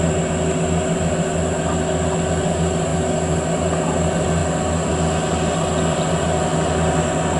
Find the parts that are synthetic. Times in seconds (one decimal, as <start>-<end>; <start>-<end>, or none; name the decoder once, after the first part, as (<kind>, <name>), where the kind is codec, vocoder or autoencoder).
none